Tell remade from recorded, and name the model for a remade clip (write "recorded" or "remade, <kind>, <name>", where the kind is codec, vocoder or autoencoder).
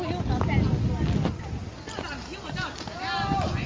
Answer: recorded